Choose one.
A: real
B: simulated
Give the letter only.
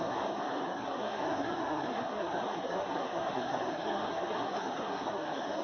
B